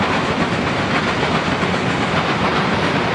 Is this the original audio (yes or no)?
yes